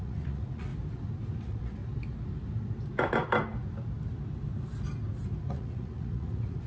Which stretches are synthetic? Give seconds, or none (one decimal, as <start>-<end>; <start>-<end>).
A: 0.0-0.7; 1.4-1.8; 5.4-6.7